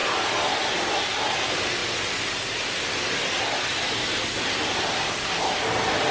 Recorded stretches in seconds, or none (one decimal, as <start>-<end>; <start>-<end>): 0.0-6.1